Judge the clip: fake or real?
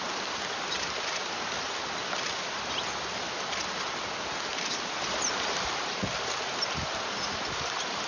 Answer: real